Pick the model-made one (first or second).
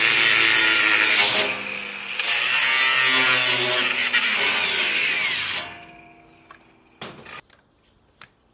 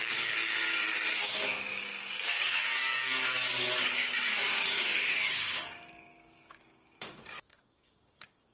second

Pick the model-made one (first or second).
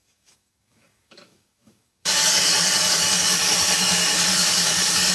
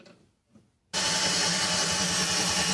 first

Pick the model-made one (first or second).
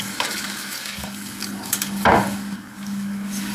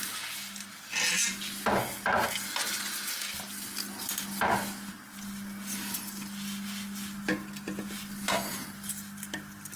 first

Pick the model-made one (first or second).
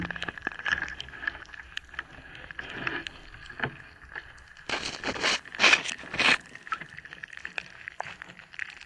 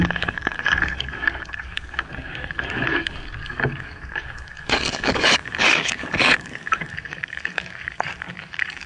second